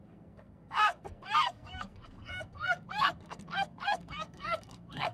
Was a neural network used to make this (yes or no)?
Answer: yes